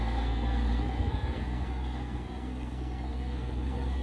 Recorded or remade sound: remade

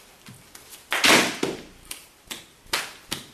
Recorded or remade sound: recorded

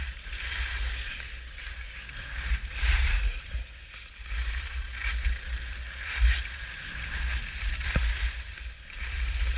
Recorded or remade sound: recorded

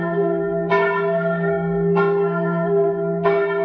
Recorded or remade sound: remade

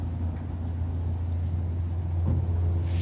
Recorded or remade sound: recorded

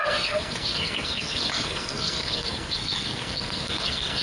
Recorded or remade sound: remade